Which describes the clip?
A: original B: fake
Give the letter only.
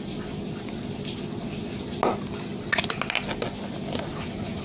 A